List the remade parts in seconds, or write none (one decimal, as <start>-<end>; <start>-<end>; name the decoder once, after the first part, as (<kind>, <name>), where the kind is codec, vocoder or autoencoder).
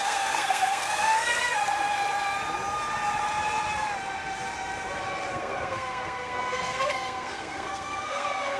0.0-1.6 (codec, SNAC); 5.3-8.6